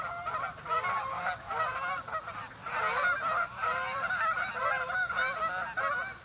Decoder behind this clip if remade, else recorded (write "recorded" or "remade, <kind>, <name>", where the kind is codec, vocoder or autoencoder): recorded